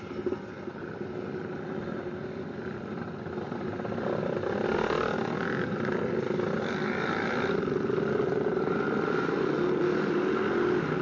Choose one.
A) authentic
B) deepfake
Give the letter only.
A